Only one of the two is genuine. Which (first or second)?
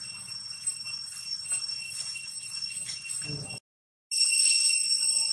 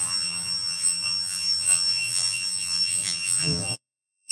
first